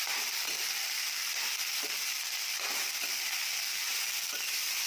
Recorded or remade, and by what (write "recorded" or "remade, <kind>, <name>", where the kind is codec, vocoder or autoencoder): recorded